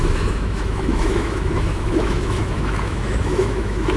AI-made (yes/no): yes